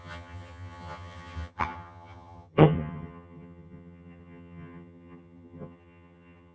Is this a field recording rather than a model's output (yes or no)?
no